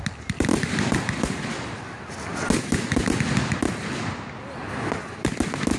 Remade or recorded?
recorded